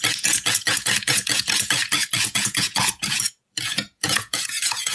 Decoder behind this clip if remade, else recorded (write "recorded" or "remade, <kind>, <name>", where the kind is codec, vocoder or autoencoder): remade, vocoder, Vocos